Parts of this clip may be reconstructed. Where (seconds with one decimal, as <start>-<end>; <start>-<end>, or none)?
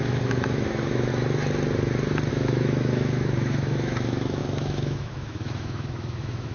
0.0-1.1; 2.3-6.5